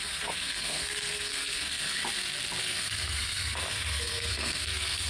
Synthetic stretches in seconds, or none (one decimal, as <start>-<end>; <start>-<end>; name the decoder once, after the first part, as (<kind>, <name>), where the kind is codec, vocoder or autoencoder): 0.0-2.0 (codec, SNAC); 2.6-5.1